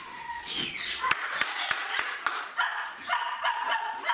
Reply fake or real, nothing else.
fake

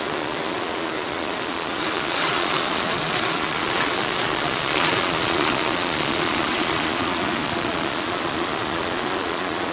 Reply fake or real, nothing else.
fake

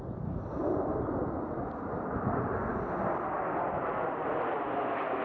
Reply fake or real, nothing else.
real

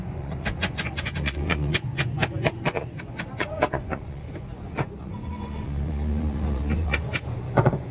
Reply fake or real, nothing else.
fake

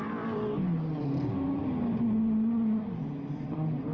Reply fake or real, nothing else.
real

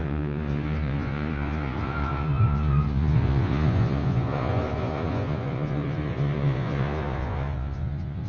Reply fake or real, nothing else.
fake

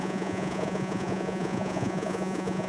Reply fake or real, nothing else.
fake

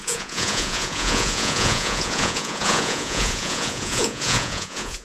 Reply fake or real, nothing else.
fake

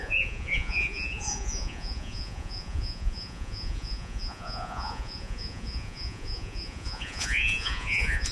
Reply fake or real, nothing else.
fake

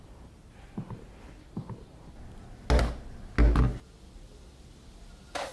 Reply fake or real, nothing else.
real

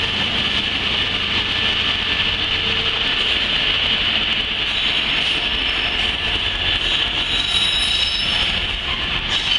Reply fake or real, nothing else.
real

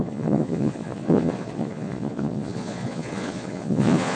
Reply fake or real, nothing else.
fake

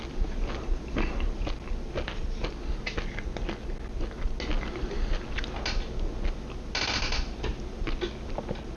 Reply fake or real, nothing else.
real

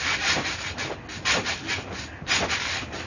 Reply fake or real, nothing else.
real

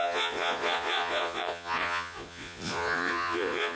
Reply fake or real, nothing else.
fake